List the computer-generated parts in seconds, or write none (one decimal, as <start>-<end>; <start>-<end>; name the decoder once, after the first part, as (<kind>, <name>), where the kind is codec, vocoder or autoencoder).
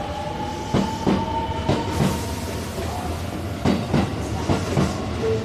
none